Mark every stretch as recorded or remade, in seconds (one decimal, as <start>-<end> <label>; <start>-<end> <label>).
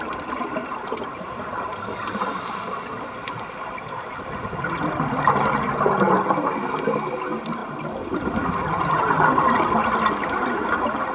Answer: 0.0-0.6 recorded; 0.6-1.4 remade; 1.4-11.1 recorded